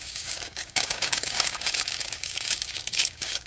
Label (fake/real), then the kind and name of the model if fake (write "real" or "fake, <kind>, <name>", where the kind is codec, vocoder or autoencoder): fake, codec, DAC